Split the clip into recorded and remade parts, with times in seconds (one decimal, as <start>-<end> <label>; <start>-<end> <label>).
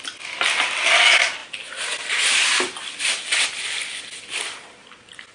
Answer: 0.0-5.3 recorded